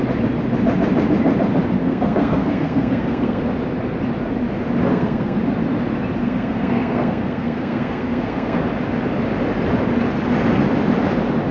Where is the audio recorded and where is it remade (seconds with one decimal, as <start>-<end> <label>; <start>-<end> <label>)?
0.0-1.8 recorded; 1.8-3.4 remade; 3.4-4.9 recorded; 4.9-5.4 remade; 5.4-6.2 recorded; 6.2-8.6 remade; 8.6-11.5 recorded